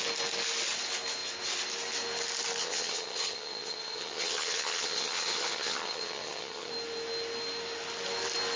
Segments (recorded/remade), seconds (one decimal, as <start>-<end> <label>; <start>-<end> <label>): 0.0-2.6 recorded; 2.6-6.7 remade; 6.7-8.6 recorded